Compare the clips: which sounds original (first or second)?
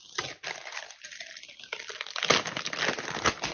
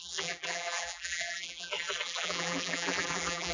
first